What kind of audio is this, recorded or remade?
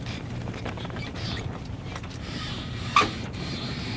remade